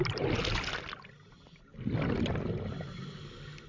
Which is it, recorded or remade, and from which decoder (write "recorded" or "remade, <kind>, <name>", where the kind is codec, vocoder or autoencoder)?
recorded